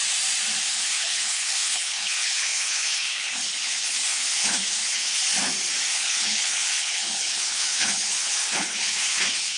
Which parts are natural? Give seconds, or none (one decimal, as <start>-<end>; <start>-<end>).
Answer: 0.0-0.6; 5.2-5.9